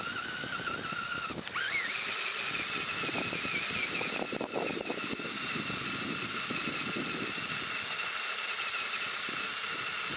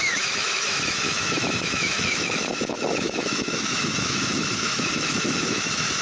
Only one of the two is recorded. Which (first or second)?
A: first